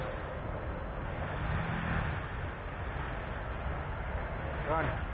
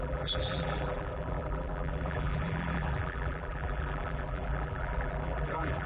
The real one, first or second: first